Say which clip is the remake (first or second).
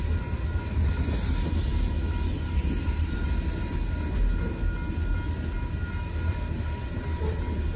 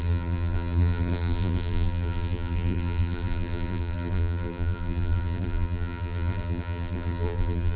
second